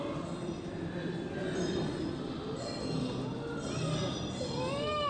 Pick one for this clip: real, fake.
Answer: real